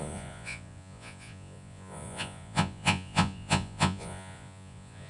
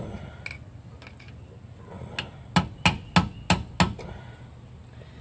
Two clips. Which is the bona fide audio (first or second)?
second